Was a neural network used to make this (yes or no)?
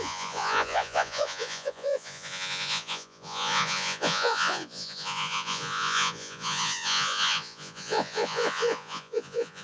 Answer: yes